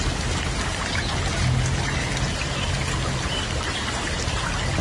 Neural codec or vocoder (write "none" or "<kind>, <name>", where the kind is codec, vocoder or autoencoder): none